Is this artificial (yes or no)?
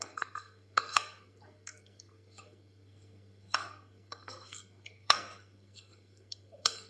yes